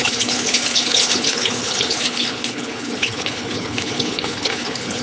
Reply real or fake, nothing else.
fake